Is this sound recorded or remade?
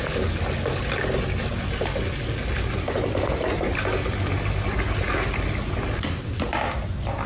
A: recorded